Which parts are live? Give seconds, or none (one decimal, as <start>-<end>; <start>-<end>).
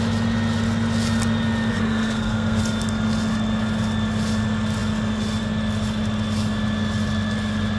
0.0-1.7; 2.6-7.8